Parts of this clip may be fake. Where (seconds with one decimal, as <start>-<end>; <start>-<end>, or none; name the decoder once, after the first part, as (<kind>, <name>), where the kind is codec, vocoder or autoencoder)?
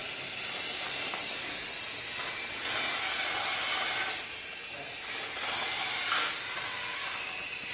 0.0-0.6 (vocoder, BigVGAN v2)